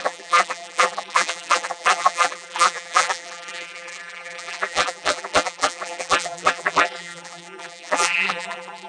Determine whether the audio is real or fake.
fake